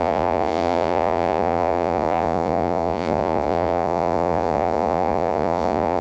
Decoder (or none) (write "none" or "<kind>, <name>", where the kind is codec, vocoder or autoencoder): vocoder, Vocos